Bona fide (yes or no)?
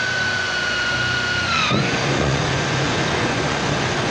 no